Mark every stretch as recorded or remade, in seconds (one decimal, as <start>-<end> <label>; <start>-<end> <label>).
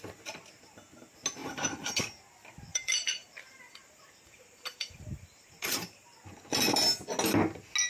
0.0-1.4 recorded; 1.4-2.0 remade; 2.0-2.7 recorded; 2.7-6.1 remade; 6.1-7.9 recorded